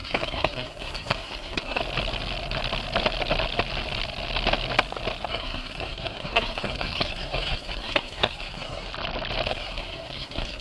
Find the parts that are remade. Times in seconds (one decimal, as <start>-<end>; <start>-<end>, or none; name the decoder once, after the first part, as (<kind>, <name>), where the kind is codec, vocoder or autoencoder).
0.0-1.8 (codec, SNAC); 5.3-8.9; 9.5-10.6